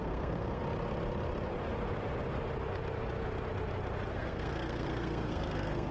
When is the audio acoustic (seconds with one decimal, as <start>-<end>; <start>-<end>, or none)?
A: 0.6-4.1